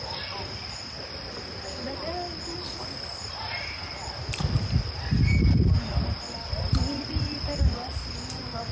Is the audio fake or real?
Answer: real